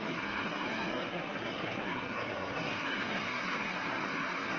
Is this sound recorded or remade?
remade